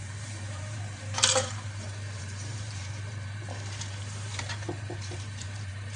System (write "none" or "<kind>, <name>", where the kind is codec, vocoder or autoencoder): vocoder, BigVGAN v2